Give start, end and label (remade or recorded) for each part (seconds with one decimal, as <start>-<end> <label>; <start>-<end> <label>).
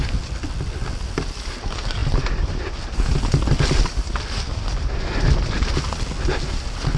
0.0-7.0 recorded